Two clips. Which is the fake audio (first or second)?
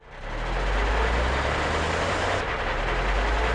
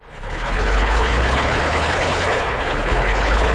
second